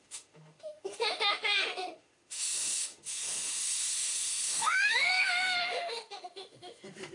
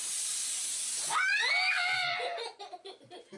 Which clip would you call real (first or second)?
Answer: second